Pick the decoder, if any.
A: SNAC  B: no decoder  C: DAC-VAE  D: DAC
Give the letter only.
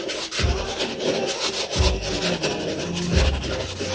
B